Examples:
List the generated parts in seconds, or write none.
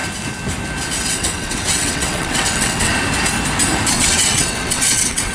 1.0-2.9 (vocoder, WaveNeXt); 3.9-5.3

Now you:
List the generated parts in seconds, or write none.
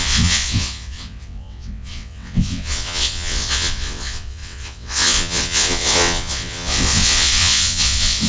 0.0-8.3 (vocoder, WaveNeXt)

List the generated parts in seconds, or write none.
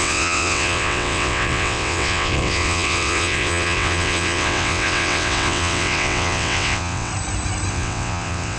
0.0-7.1 (vocoder, WaveNeXt); 7.7-8.6